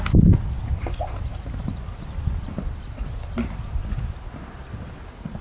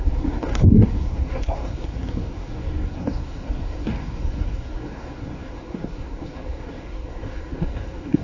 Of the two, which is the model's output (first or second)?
second